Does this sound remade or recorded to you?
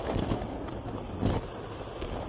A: recorded